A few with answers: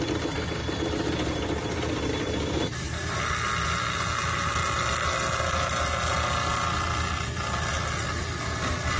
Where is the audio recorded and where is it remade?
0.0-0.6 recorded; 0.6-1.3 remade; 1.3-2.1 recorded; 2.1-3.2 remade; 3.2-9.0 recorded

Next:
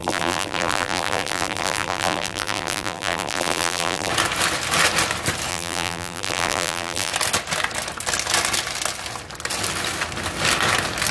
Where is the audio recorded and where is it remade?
0.0-4.1 remade; 4.1-5.5 recorded; 5.5-7.1 remade; 7.1-11.1 recorded

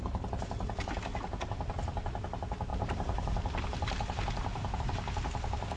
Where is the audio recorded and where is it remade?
0.0-2.7 recorded; 2.7-4.8 remade; 4.8-5.8 recorded

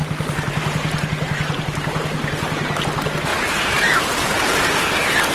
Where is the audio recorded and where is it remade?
0.0-2.8 remade; 2.8-3.3 recorded; 3.3-4.7 remade; 4.7-5.3 recorded

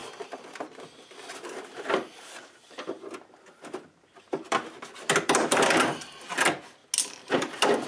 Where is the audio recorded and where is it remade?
0.0-3.4 recorded; 3.4-6.8 remade; 6.8-7.3 recorded; 7.3-7.9 remade

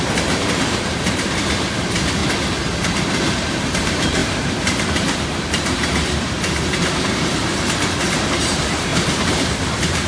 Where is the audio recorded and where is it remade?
0.0-2.2 remade; 2.2-2.8 recorded; 2.8-8.9 remade; 8.9-9.5 recorded; 9.5-10.1 remade

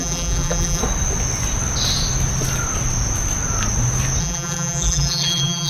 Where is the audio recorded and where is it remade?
0.0-0.8 remade; 0.8-4.2 recorded; 4.2-5.7 remade

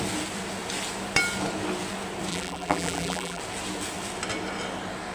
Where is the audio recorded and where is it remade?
0.0-2.3 recorded; 2.3-3.4 remade; 3.4-5.1 recorded